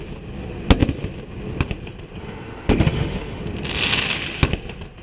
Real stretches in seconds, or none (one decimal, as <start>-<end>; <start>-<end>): 0.0-2.2; 3.4-5.0